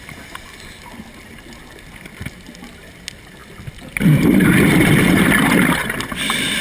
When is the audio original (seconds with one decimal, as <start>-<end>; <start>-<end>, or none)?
0.0-6.6